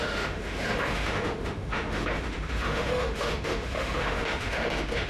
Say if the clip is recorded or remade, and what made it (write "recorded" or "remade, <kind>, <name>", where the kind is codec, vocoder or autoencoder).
remade, autoencoder, DAC-VAE